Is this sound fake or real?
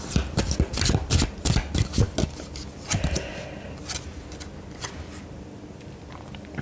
real